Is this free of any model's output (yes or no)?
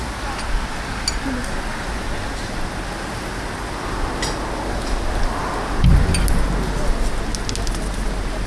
yes